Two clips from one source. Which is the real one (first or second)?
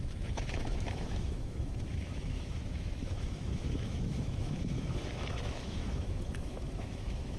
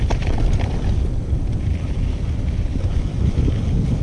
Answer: second